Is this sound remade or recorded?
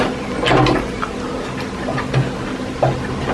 recorded